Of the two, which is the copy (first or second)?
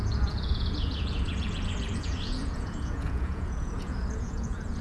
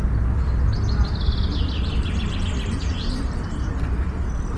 first